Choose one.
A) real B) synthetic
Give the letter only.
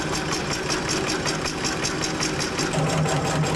A